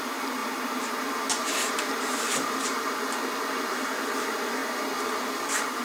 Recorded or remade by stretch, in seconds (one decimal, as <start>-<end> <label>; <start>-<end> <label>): 0.0-4.6 remade; 4.6-5.2 recorded; 5.2-5.8 remade